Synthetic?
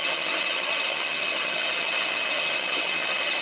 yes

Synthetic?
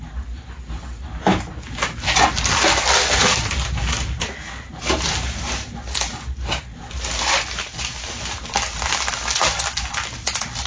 no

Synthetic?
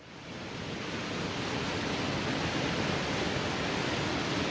no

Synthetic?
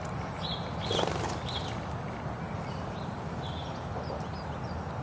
no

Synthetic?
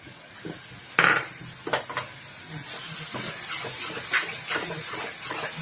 no